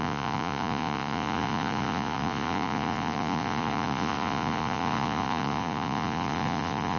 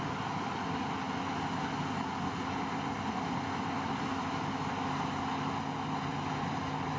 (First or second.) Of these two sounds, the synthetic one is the first